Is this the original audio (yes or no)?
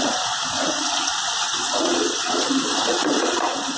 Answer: no